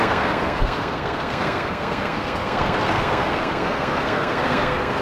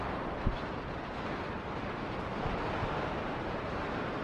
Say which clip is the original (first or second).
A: second